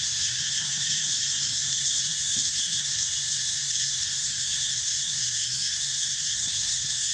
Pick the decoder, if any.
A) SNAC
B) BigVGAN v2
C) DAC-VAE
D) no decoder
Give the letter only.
A